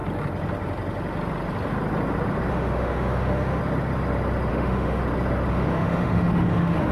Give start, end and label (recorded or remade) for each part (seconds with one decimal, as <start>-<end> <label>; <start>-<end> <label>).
0.0-2.5 recorded; 2.5-3.6 remade; 3.6-4.5 recorded; 4.5-5.0 remade; 5.0-5.5 recorded; 5.5-6.9 remade